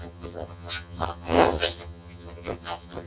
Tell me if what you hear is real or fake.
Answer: fake